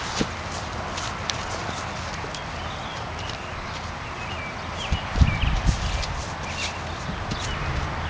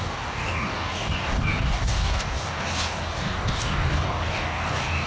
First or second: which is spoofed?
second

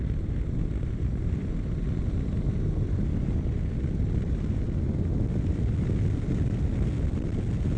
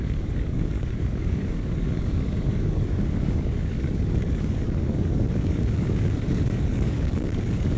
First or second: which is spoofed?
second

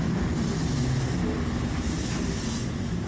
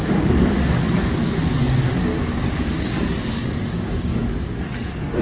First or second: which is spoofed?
second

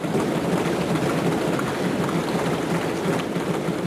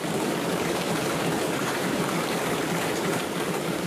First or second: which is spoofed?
second